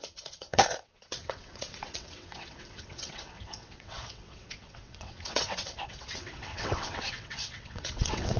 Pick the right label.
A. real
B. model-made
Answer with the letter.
B